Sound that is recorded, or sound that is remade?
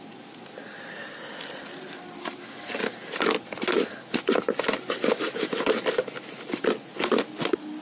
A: recorded